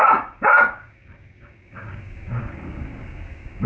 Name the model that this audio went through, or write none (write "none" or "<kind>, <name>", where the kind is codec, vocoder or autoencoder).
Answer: codec, DAC